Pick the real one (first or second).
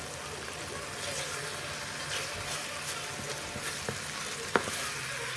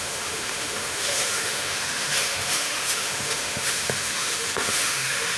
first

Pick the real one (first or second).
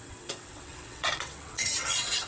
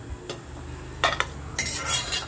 second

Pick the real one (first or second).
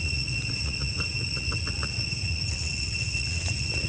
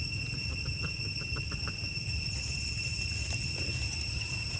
second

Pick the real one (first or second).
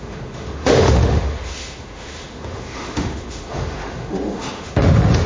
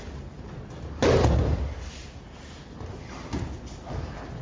second